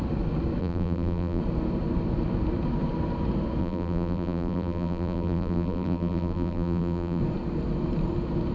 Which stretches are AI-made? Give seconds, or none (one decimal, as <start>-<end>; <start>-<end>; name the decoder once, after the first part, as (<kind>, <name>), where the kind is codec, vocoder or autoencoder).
0.6-1.4 (vocoder, BigVGAN v2); 3.6-7.2